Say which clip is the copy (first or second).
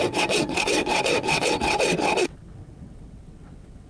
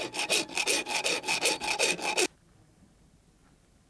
first